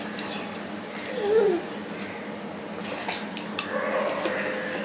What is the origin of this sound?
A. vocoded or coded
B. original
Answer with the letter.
B